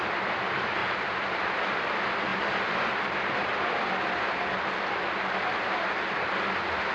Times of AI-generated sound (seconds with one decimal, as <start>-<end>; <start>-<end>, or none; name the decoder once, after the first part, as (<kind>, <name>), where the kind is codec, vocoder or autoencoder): 0.8-1.4 (vocoder, BigVGAN v2); 2.3-3.9